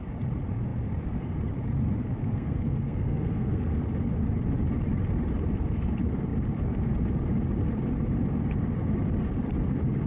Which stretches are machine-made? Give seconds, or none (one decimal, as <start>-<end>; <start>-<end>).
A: 2.2-3.8